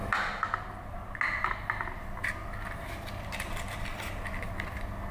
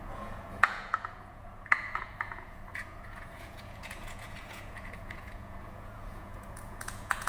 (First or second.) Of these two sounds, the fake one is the second